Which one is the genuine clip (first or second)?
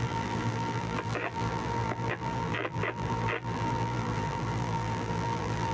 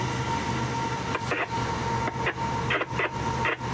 second